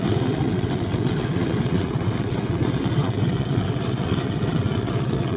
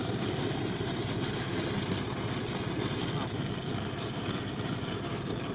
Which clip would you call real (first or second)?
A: second